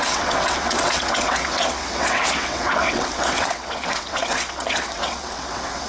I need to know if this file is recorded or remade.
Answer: remade